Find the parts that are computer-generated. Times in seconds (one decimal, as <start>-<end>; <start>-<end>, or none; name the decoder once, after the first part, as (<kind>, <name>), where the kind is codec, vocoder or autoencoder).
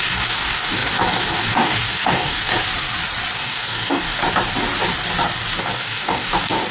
0.0-2.5 (codec, DAC); 3.3-4.2; 5.6-6.7